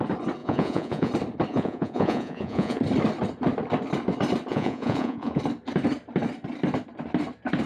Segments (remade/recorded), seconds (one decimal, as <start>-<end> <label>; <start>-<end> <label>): 0.0-0.4 recorded; 0.4-1.1 remade; 1.1-1.5 recorded; 1.5-2.8 remade; 2.8-4.5 recorded; 4.5-5.4 remade; 5.4-7.7 recorded